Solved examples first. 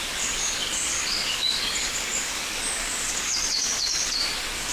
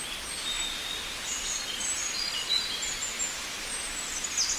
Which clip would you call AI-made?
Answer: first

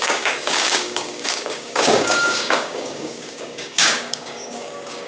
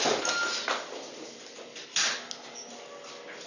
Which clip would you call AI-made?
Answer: first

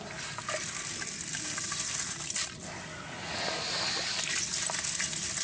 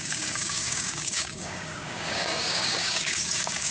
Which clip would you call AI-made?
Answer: second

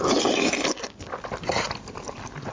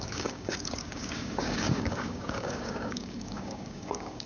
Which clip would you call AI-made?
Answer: second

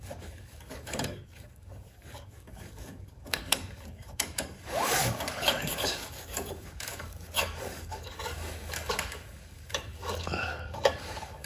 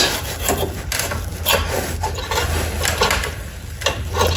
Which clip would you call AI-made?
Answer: first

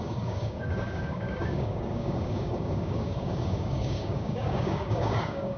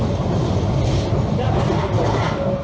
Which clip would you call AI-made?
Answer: first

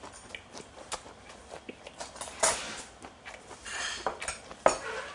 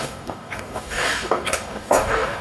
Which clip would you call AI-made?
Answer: second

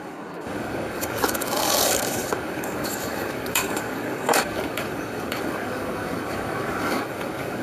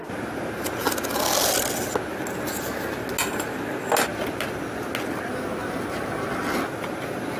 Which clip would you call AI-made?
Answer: first